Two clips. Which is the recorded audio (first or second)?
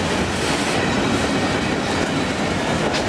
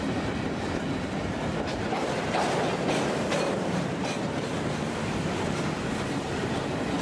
first